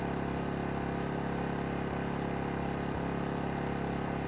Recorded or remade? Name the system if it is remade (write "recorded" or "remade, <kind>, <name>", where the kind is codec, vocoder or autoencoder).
recorded